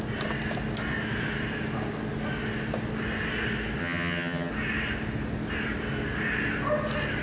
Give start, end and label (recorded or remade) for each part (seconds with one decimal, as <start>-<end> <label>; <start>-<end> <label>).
0.0-3.8 recorded; 3.8-4.5 remade; 4.5-7.2 recorded